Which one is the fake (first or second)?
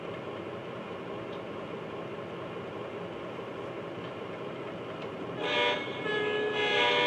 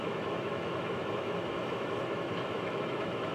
second